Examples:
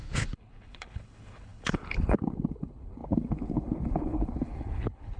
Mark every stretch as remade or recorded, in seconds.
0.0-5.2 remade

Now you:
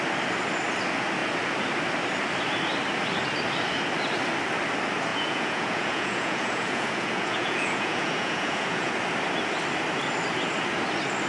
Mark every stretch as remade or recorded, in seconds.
0.0-5.1 recorded; 5.1-8.9 remade; 8.9-11.3 recorded